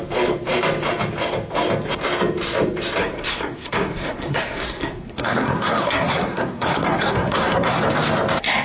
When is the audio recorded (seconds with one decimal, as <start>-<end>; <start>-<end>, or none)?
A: 0.0-3.0; 7.8-8.6